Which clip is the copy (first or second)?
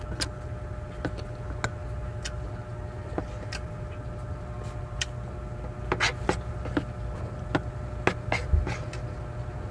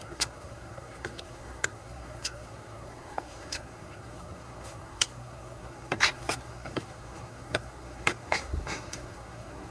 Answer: second